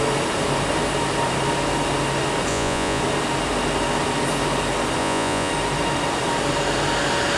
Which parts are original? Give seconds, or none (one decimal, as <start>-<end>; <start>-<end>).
0.0-2.5; 3.0-5.0; 5.5-7.4